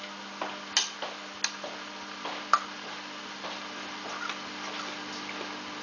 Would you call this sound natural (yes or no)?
yes